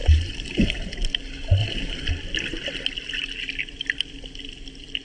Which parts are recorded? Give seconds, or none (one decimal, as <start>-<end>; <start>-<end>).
0.9-1.6; 2.1-5.0